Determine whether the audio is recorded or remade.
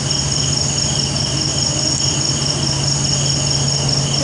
recorded